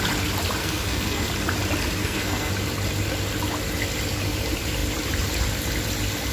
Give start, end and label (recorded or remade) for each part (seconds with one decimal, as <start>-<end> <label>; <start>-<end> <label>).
0.0-0.6 recorded; 0.6-1.3 remade; 1.3-2.0 recorded; 2.0-2.5 remade; 2.5-6.3 recorded

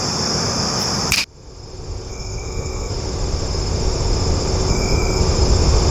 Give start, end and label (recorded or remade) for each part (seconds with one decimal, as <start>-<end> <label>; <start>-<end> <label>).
0.0-2.1 recorded; 2.1-2.9 remade; 2.9-4.7 recorded; 4.7-5.2 remade; 5.2-5.9 recorded